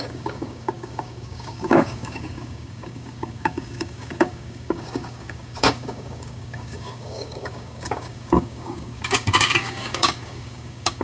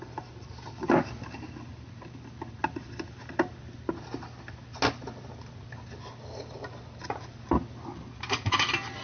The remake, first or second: first